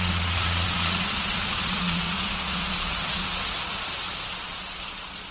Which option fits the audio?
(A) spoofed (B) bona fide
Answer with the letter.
A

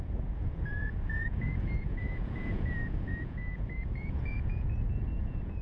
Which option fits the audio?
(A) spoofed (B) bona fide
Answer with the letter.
A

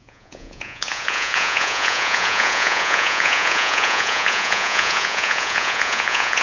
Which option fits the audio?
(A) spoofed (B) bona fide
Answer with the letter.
A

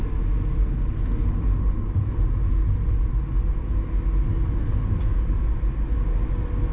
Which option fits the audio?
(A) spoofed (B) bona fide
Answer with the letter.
B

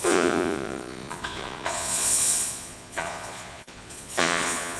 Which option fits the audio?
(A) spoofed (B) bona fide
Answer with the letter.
A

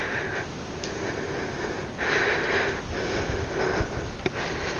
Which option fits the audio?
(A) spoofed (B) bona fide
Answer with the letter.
B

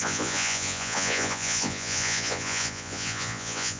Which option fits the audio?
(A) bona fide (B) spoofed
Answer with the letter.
B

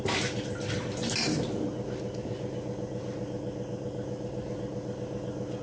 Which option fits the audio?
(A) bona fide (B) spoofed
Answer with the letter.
A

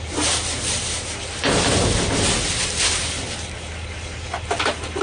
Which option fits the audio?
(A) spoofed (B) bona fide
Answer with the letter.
B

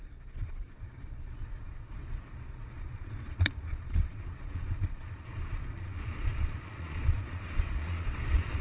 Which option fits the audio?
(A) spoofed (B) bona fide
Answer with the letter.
A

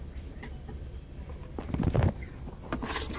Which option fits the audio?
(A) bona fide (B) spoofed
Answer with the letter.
A